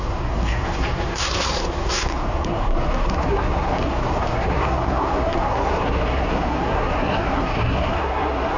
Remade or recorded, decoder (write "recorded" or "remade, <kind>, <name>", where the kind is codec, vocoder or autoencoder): remade, codec, SNAC